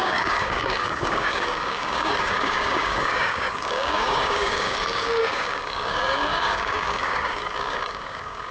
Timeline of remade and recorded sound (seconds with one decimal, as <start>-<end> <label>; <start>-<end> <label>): 0.0-8.5 remade

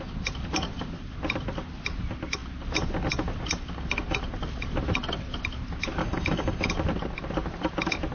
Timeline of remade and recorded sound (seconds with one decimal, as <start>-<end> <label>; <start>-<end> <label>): 0.0-6.0 recorded; 6.0-6.7 remade; 6.7-8.1 recorded

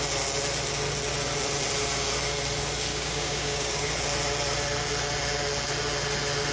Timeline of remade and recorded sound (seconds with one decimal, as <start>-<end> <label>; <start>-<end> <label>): 0.0-2.9 recorded; 2.9-3.9 remade; 3.9-6.5 recorded

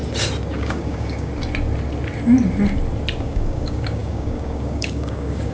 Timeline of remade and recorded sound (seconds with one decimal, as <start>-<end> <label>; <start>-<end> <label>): 0.0-0.5 recorded; 0.5-1.3 remade; 1.3-3.2 recorded; 3.2-5.5 remade

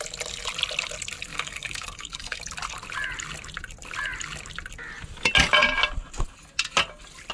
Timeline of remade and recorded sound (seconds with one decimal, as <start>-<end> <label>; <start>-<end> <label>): 0.0-1.3 recorded; 1.3-2.4 remade; 2.4-7.3 recorded

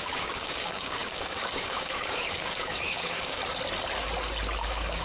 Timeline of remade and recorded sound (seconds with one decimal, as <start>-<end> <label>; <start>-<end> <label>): 0.0-3.4 remade; 3.4-4.6 recorded; 4.6-5.0 remade